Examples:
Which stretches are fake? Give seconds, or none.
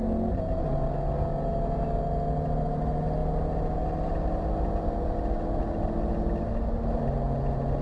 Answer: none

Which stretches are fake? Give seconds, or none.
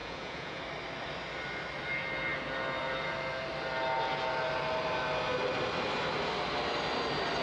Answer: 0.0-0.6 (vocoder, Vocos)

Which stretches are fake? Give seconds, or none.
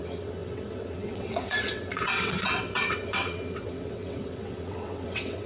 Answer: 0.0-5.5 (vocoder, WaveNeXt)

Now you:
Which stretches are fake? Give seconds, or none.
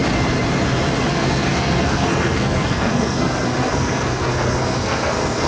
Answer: 1.1-5.5 (codec, SNAC)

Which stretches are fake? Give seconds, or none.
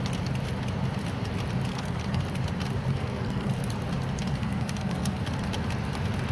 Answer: 1.7-2.2 (codec, SNAC); 2.9-3.5; 4.3-5.2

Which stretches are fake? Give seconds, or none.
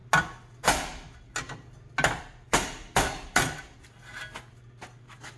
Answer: none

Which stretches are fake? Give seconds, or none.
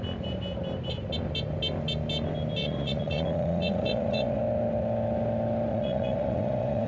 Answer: 2.6-4.4 (vocoder, Vocos); 5.7-6.9